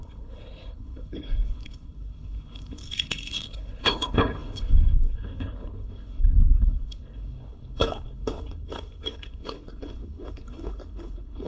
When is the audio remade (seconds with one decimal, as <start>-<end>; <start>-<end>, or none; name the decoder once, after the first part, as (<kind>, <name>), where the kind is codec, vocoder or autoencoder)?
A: 0.0-11.5 (codec, HILCodec)